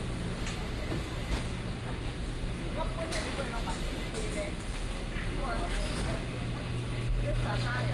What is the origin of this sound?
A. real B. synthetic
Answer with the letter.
A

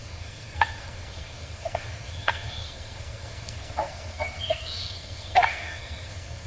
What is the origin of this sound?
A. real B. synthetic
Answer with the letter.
B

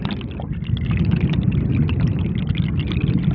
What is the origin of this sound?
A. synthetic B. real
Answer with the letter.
B